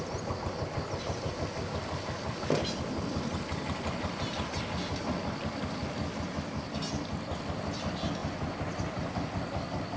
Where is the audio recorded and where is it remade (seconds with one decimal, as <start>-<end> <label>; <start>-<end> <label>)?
0.0-10.0 recorded